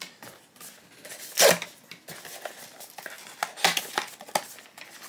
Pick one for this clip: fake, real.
real